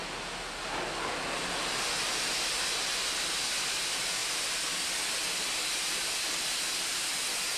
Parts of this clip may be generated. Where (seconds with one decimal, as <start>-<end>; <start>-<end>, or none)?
none